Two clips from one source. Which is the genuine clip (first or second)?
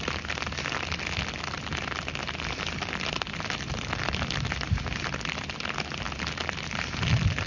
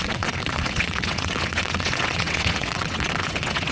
first